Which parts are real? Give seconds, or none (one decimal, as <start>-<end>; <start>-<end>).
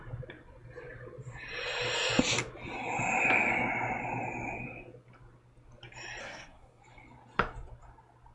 0.0-6.2; 6.8-8.3